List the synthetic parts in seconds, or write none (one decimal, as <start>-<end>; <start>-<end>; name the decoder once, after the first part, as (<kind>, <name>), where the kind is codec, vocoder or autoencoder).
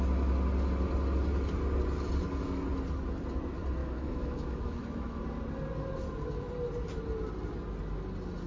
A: 3.8-5.2 (autoencoder, DAC-VAE)